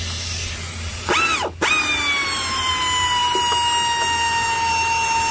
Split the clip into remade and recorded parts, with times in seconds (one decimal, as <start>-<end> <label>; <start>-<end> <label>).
0.0-2.2 recorded; 2.2-2.7 remade; 2.7-5.3 recorded